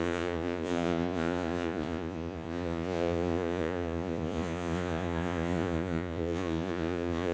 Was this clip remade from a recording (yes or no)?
yes